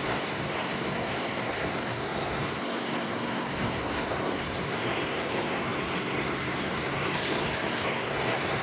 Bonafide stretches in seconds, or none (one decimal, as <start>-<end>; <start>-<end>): none